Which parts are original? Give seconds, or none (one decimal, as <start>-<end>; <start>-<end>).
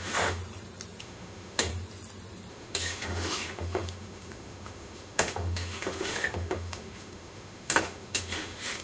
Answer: 0.4-1.0; 1.7-2.5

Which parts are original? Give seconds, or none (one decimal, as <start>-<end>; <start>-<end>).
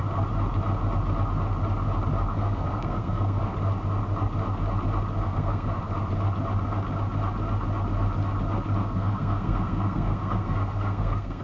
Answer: 0.0-2.3; 3.4-5.2; 5.8-8.8